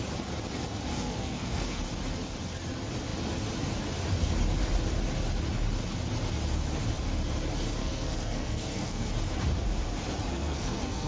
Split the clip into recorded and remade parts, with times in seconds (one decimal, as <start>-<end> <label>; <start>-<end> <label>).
0.0-0.9 recorded; 0.9-1.8 remade; 1.8-7.8 recorded; 7.8-9.1 remade; 9.1-10.3 recorded; 10.3-11.1 remade

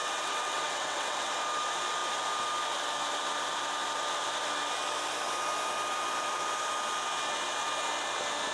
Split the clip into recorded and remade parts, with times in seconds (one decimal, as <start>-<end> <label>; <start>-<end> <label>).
0.0-1.3 remade; 1.3-8.5 recorded

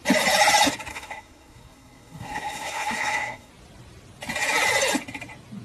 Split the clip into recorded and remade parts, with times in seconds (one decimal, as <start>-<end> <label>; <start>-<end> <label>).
0.0-0.9 recorded; 0.9-3.5 remade; 3.5-5.6 recorded

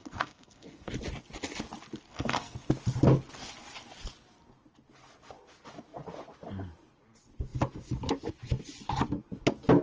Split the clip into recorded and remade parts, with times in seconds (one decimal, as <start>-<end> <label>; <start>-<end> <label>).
0.0-0.9 remade; 0.9-2.1 recorded; 2.1-2.7 remade; 2.7-9.8 recorded

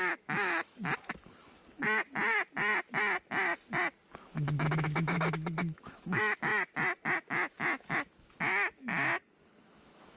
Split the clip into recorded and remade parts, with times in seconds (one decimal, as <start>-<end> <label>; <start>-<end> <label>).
0.0-1.6 remade; 1.6-4.2 recorded; 4.2-6.5 remade; 6.5-7.3 recorded; 7.3-8.9 remade; 8.9-9.4 recorded; 9.4-10.2 remade

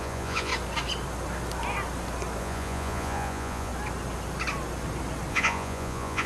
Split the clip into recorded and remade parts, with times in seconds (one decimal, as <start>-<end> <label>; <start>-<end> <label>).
0.0-0.5 remade; 0.5-2.4 recorded; 2.4-3.7 remade; 3.7-5.3 recorded; 5.3-6.3 remade

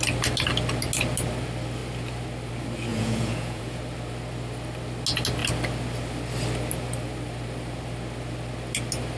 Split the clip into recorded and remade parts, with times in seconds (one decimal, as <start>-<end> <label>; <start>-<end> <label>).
0.0-2.9 recorded; 2.9-3.8 remade; 3.8-9.2 recorded